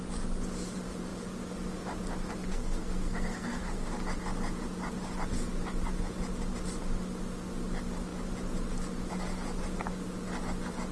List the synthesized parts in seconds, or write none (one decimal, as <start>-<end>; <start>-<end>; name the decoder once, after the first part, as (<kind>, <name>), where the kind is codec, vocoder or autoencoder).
2.5-3.9 (codec, SNAC)